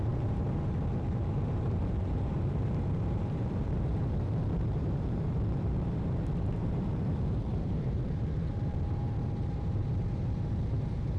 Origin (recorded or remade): remade